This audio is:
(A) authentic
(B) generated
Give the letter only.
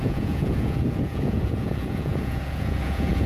B